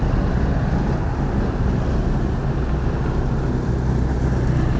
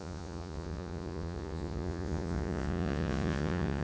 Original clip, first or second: first